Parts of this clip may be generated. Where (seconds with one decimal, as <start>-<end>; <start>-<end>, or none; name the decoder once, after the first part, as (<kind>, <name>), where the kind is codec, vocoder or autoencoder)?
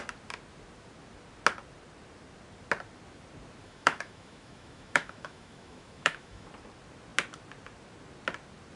3.6-6.5 (autoencoder, DAC-VAE)